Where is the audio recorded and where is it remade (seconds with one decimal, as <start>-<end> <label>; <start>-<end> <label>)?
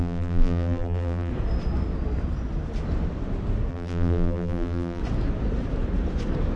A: 0.0-1.3 remade; 1.3-3.7 recorded; 3.7-5.0 remade; 5.0-6.6 recorded